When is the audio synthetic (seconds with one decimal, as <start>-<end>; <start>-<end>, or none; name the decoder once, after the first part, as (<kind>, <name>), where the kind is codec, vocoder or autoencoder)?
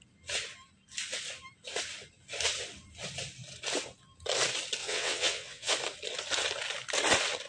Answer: 4.8-5.7 (vocoder, WaveNeXt)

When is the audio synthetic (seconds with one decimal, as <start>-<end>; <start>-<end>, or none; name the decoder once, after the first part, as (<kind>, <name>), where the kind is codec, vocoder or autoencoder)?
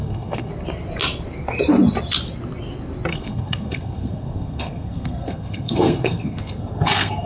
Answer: 0.0-0.5 (codec, SNAC); 3.1-7.3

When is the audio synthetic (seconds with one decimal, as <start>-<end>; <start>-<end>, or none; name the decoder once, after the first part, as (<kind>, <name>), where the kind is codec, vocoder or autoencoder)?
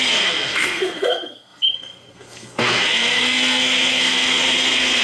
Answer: 0.0-5.0 (codec, SNAC)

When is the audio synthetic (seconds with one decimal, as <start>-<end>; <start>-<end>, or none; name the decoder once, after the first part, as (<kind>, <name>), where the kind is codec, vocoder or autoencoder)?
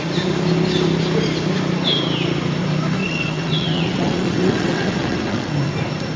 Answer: 3.0-5.5 (vocoder, WaveNeXt)